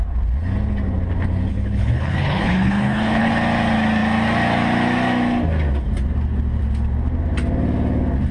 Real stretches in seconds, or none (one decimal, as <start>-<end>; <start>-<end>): 0.0-1.5; 3.3-8.3